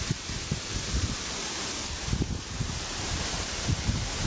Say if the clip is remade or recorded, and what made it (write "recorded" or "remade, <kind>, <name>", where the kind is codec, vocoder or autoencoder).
remade, vocoder, BigVGAN v2